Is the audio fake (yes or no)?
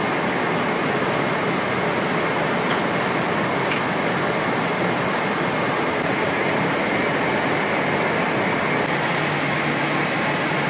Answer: no